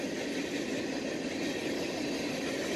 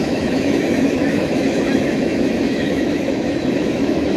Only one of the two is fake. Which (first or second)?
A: second